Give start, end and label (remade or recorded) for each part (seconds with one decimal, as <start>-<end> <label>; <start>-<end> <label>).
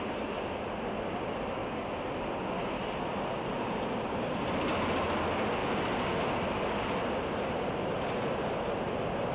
0.0-9.3 recorded